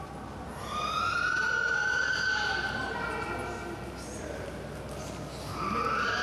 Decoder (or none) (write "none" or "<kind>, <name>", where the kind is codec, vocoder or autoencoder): none